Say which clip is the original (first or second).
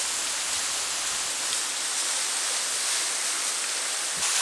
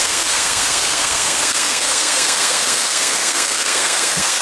first